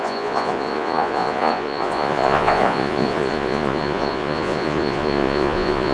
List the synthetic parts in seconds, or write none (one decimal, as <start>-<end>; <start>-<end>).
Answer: 0.0-5.9